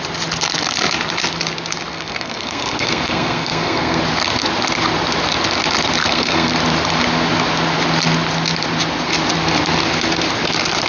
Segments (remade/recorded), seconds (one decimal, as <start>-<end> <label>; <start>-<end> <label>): 0.0-1.9 recorded; 1.9-4.0 remade; 4.0-6.0 recorded; 6.0-6.5 remade; 6.5-10.9 recorded